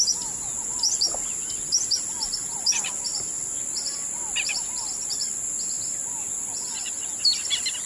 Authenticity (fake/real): real